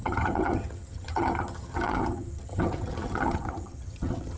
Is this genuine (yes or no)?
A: no